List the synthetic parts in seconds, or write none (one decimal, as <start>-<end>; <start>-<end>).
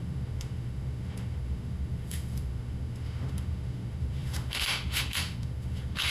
0.0-6.1